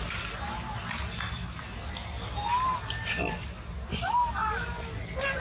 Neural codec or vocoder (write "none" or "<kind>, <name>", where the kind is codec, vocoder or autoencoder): none